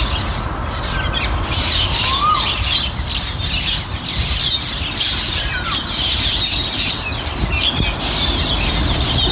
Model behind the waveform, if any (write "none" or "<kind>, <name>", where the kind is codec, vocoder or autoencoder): none